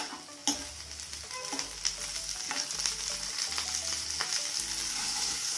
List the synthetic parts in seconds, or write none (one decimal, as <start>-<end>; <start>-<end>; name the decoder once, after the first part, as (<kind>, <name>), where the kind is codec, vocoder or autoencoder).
4.9-5.6 (codec, SNAC)

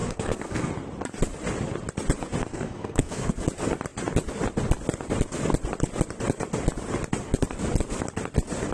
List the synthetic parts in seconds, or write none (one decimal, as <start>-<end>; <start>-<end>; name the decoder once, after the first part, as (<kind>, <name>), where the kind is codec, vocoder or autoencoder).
0.0-0.7 (codec, SNAC); 2.5-3.3